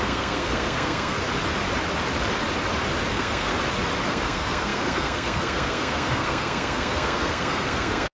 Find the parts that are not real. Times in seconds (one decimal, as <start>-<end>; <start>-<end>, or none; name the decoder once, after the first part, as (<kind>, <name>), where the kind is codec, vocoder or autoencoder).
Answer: 0.0-1.2 (codec, SNAC); 3.1-3.5; 4.1-8.1